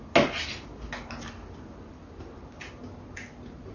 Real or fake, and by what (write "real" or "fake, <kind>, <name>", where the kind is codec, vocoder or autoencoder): real